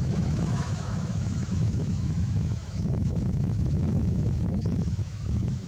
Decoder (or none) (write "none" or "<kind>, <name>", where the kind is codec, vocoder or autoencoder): autoencoder, DAC-VAE